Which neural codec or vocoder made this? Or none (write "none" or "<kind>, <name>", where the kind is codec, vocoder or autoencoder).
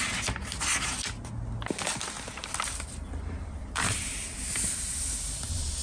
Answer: none